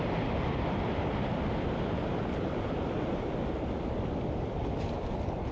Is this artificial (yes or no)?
no